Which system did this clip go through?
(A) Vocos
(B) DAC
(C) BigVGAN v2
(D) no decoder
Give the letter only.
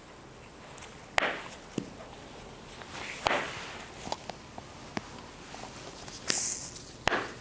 D